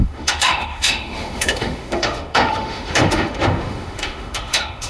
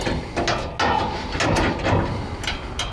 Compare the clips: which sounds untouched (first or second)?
second